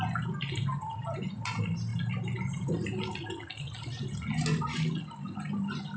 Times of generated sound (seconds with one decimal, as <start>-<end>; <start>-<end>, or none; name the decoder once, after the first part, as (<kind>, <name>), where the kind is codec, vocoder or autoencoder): none